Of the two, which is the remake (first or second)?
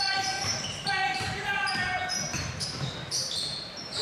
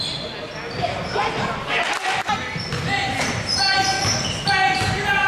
first